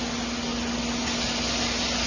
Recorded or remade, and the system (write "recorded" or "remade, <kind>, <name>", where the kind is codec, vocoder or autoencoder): recorded